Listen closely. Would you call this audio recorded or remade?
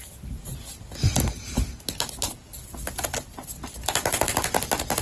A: recorded